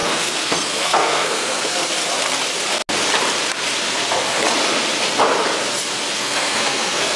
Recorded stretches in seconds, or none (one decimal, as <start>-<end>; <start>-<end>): 1.9-6.2